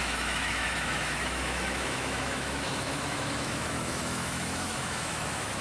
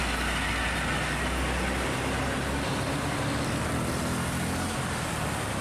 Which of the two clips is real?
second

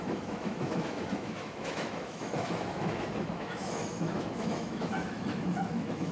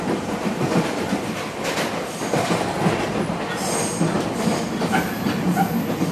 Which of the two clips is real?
second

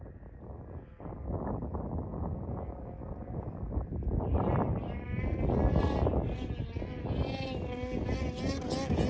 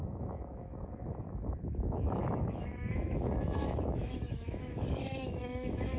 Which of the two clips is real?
first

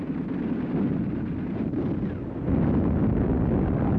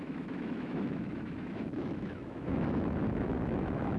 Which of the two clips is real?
first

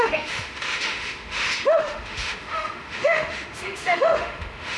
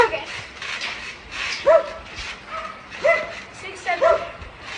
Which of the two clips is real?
second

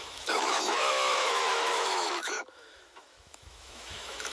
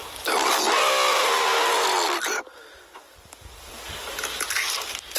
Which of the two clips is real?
second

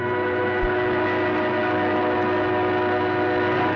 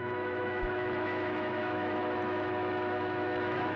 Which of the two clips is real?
first